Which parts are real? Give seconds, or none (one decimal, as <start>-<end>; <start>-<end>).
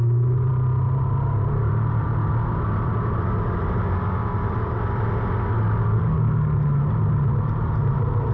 0.0-8.3